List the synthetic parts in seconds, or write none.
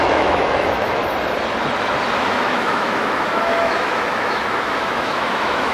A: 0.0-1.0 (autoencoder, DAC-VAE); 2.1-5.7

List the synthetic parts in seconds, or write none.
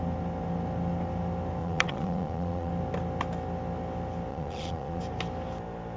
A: 1.6-2.7 (vocoder, Vocos); 4.3-5.0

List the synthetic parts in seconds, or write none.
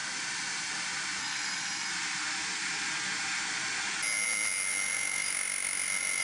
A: 1.2-1.9 (codec, SNAC)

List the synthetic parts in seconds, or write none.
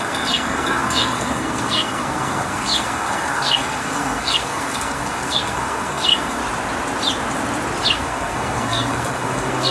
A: 0.0-6.4 (codec, SNAC); 7.9-9.7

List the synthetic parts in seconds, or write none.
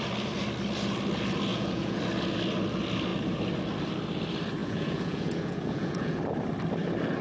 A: 1.5-2.0 (vocoder, Vocos); 4.6-6.2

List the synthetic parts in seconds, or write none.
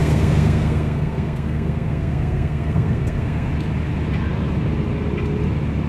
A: 0.0-3.5 (codec, SNAC)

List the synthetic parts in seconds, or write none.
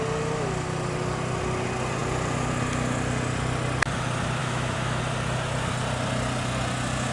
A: 4.4-5.0 (autoencoder, DAC-VAE)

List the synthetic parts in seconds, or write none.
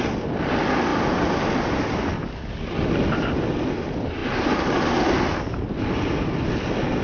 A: none